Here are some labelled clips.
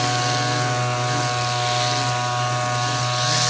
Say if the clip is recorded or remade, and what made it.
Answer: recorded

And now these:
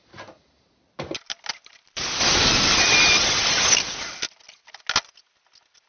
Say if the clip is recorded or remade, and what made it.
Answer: recorded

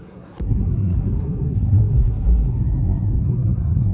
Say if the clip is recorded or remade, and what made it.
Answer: remade, codec, SNAC